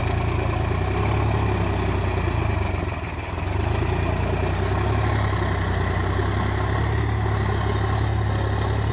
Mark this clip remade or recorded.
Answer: recorded